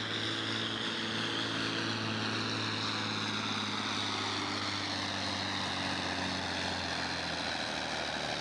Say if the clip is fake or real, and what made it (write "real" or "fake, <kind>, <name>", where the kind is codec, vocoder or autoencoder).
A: real